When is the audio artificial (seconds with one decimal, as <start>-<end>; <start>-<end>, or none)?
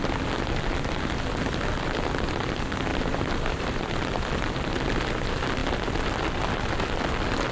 2.9-3.9